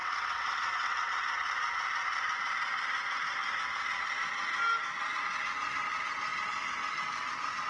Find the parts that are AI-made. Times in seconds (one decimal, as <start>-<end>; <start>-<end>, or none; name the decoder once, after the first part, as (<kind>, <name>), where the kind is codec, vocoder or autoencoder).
0.0-1.1 (vocoder, WaveNeXt)